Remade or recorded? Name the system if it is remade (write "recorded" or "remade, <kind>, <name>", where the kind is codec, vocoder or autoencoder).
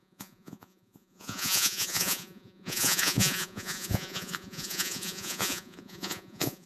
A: remade, vocoder, Vocos